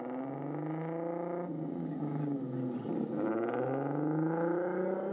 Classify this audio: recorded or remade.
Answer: recorded